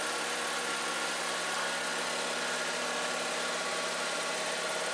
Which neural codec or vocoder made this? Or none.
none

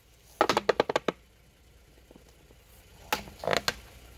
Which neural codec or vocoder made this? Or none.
none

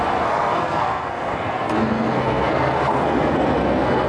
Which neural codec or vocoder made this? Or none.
codec, SNAC